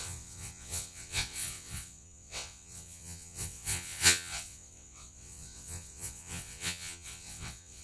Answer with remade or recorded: remade